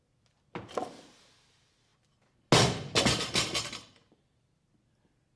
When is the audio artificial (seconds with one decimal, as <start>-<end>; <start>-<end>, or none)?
none